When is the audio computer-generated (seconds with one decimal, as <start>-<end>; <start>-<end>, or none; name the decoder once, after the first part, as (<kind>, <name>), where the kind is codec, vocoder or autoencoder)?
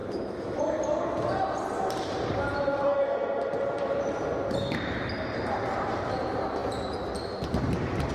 0.0-0.6 (autoencoder, DAC-VAE)